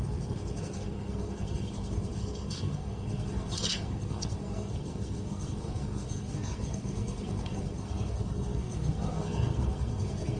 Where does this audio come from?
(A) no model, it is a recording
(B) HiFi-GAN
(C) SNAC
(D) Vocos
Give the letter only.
C